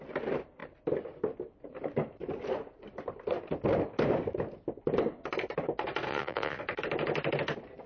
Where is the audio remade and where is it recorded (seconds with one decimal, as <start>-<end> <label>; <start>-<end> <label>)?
0.0-6.1 recorded; 6.1-6.6 remade; 6.6-7.9 recorded